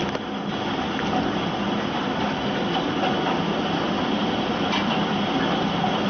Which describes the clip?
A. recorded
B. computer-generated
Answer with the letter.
A